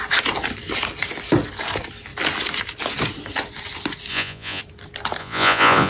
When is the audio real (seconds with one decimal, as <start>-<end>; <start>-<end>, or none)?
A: 0.0-4.1; 4.6-5.2